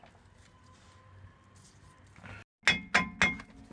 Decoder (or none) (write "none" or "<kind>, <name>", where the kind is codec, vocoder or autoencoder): none